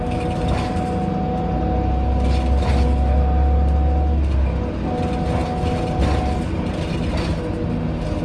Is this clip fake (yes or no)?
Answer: no